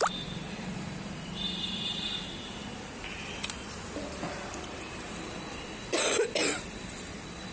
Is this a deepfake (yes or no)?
yes